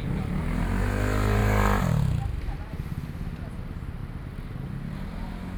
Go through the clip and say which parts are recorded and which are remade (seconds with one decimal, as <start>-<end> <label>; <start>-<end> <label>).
0.0-1.4 recorded; 1.4-3.4 remade; 3.4-5.6 recorded